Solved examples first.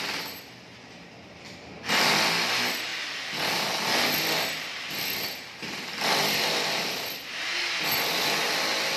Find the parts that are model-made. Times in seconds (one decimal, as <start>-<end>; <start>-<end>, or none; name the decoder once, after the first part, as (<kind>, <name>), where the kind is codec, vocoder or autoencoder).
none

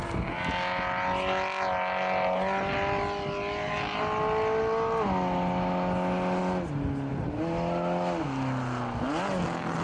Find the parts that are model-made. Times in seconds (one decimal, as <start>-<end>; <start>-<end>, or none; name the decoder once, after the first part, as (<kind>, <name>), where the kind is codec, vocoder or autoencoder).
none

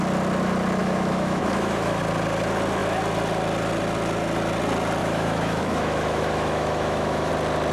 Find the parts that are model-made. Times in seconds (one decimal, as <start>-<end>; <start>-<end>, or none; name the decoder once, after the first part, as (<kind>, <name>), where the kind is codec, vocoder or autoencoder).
0.8-2.0 (autoencoder, DAC-VAE); 5.0-7.3

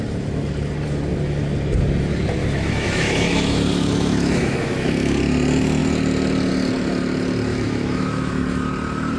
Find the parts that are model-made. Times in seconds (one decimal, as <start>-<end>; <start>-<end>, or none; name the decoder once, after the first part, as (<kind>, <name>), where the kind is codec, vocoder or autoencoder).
2.4-5.2 (autoencoder, DAC-VAE); 7.5-8.3

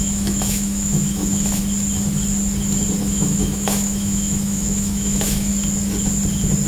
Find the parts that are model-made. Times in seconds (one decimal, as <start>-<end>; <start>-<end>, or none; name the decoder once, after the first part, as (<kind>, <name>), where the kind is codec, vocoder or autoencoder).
0.0-1.6 (autoencoder, DAC-VAE); 3.0-5.5